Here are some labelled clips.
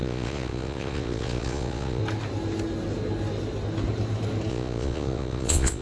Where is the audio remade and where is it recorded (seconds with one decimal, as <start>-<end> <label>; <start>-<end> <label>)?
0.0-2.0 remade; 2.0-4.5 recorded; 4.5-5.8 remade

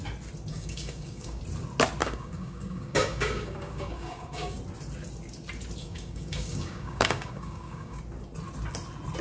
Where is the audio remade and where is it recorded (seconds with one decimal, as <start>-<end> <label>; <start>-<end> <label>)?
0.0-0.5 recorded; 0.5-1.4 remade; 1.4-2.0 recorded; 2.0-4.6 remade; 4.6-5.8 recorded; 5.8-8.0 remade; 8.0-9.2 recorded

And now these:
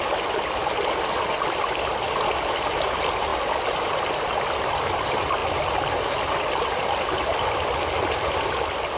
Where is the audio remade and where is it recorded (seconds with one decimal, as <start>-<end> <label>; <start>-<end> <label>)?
0.0-9.0 recorded

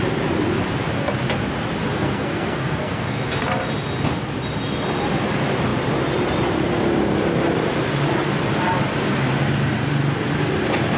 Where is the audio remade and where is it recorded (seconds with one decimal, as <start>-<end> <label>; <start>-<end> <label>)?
0.0-1.9 recorded; 1.9-3.3 remade; 3.3-11.0 recorded

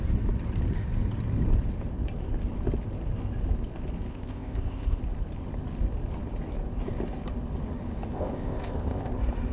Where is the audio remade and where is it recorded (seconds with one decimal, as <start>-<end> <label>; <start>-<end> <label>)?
0.0-4.1 recorded; 4.1-5.0 remade; 5.0-8.1 recorded; 8.1-9.1 remade; 9.1-9.5 recorded

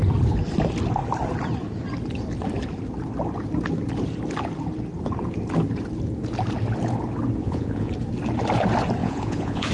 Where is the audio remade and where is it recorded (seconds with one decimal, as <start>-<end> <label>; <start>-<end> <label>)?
0.0-7.4 recorded; 7.4-7.9 remade; 7.9-9.0 recorded; 9.0-9.7 remade

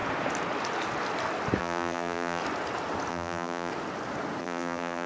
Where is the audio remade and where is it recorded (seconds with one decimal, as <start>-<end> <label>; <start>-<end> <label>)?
0.0-1.6 recorded; 1.6-2.4 remade; 2.4-3.1 recorded; 3.1-3.7 remade; 3.7-4.4 recorded; 4.4-5.1 remade

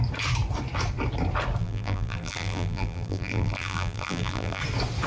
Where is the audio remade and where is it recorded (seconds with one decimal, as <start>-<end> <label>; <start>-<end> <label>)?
0.0-1.6 recorded; 1.6-4.6 remade; 4.6-5.1 recorded